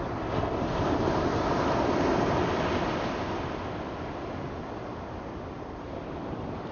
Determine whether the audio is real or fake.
real